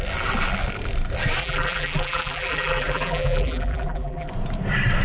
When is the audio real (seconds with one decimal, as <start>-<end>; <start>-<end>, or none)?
0.0-1.4; 4.3-5.0